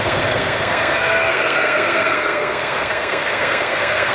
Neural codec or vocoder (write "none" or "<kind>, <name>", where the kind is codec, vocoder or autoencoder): codec, SNAC